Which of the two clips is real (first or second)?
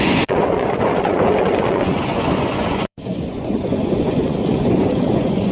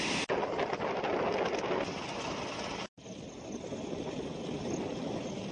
second